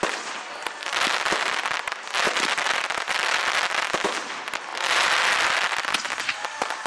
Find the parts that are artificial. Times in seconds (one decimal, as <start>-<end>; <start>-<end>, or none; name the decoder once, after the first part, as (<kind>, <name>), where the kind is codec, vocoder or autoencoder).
none